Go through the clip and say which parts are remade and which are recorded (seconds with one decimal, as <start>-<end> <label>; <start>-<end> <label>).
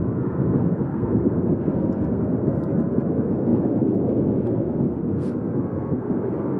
0.0-6.6 remade